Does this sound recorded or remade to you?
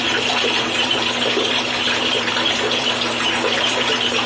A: remade